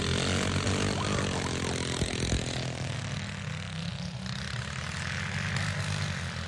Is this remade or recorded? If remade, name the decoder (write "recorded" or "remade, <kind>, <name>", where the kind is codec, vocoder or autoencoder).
recorded